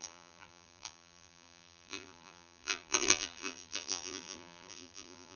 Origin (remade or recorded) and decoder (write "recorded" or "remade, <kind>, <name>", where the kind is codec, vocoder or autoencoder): remade, vocoder, BigVGAN v2